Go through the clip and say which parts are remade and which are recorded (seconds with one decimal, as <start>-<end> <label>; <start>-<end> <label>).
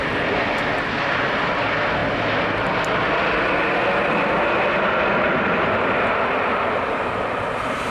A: 0.0-7.9 recorded